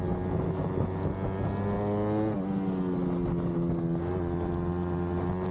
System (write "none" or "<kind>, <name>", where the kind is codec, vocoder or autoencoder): none